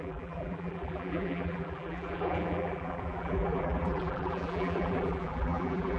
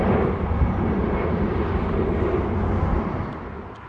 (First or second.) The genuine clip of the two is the second